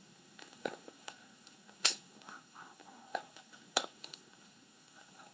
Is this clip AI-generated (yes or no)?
yes